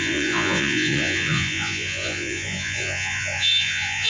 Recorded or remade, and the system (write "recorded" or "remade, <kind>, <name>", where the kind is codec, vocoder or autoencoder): remade, vocoder, Vocos